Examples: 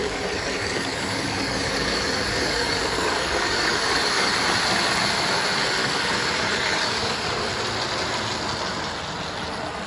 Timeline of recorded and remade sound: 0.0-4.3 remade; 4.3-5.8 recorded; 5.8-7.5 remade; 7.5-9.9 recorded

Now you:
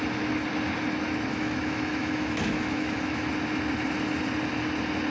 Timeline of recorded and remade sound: 0.0-1.3 recorded; 1.3-3.3 remade; 3.3-5.1 recorded

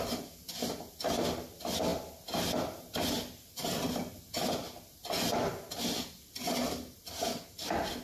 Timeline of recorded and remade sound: 0.0-8.0 recorded